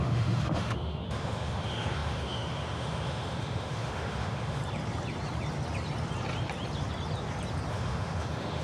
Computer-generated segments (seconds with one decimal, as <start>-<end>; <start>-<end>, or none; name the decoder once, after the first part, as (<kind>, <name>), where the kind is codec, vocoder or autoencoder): 0.0-4.6 (autoencoder, DAC-VAE); 7.7-8.6